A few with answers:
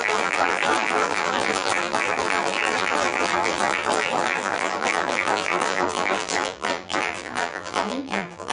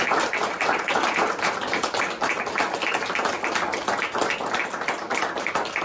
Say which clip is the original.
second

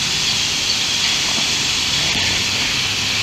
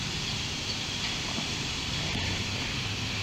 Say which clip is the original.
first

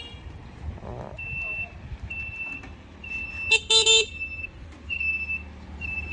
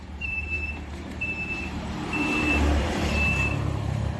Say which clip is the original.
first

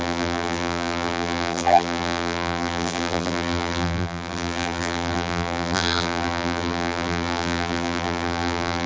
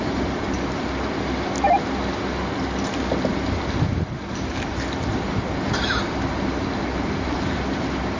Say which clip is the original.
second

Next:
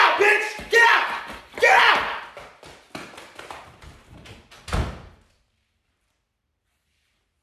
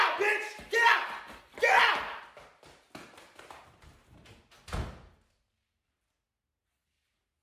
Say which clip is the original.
second